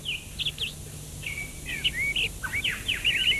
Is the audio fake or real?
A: real